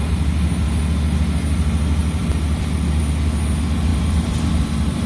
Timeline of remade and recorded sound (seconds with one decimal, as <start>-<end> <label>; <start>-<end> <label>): 0.0-2.0 recorded; 2.0-3.0 remade; 3.0-3.9 recorded; 3.9-5.1 remade